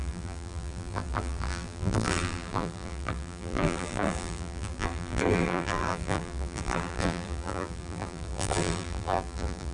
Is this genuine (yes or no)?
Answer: no